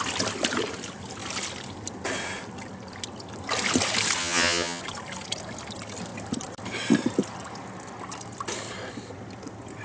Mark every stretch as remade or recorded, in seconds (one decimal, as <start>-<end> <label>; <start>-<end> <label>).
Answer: 0.0-4.2 recorded; 4.2-4.8 remade; 4.8-9.8 recorded